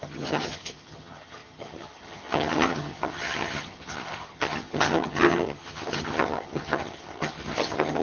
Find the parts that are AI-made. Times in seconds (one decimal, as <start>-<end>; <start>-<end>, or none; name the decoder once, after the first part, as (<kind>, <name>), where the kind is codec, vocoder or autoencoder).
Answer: 0.0-8.0 (vocoder, HiFi-GAN)